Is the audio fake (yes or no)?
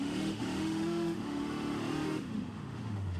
yes